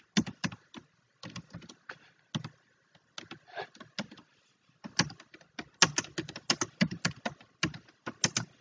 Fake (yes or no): no